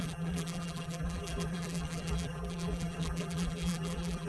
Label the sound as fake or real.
fake